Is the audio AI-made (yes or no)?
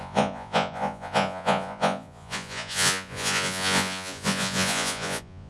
yes